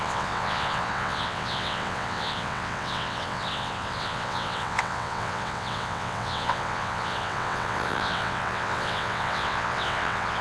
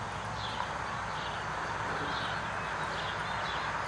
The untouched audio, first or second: second